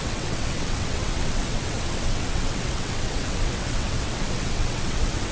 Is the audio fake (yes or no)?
yes